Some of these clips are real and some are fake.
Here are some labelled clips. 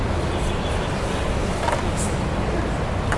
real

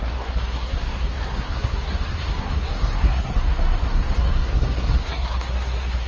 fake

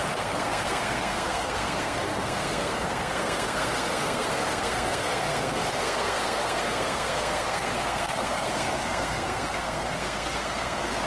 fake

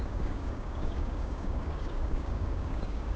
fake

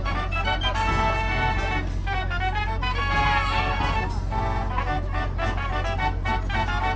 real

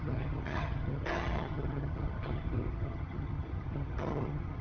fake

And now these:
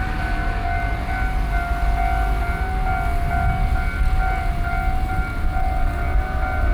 real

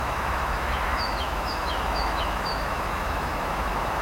fake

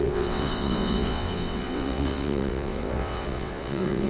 fake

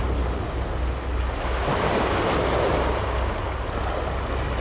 real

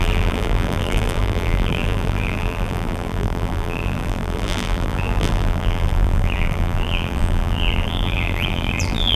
fake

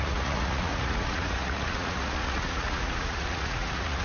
fake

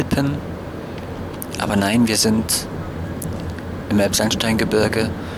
real